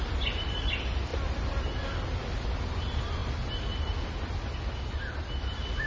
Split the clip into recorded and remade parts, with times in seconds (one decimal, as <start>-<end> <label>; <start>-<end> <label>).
0.0-5.9 recorded